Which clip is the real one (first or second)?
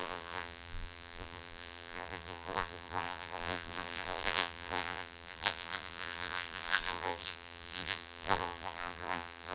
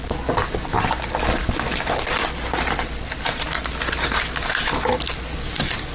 second